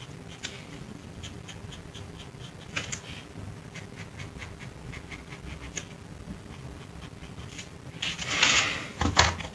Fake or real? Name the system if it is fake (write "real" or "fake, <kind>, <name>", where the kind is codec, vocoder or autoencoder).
real